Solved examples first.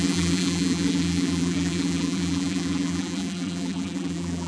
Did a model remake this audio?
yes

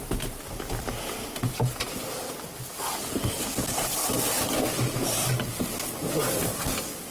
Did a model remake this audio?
no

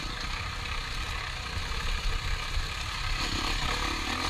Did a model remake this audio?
no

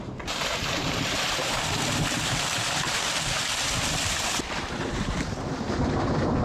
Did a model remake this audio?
yes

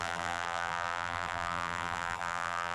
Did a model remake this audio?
yes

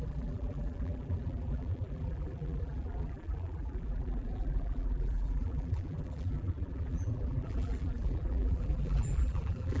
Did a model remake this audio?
yes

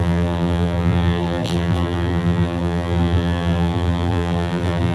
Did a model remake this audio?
yes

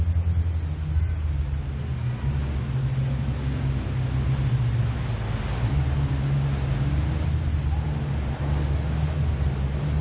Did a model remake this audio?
no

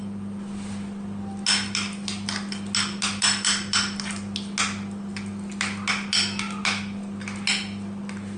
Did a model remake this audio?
no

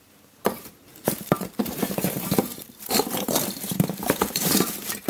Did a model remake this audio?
yes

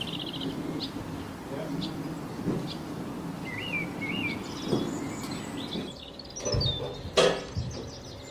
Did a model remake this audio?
no